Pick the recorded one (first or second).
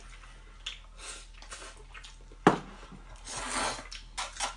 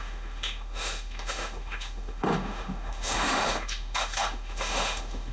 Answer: first